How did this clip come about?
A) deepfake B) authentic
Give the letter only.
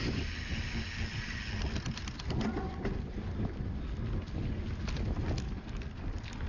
B